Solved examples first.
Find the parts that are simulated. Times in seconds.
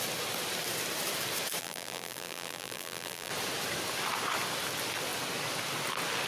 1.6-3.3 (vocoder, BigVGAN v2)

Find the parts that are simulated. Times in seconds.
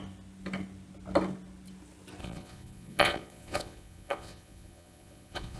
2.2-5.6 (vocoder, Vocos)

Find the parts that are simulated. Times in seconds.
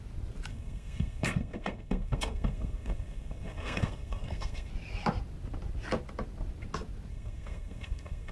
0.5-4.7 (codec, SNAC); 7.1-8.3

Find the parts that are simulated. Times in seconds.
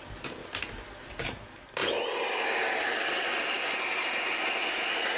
none